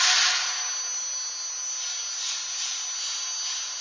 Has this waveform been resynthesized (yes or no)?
no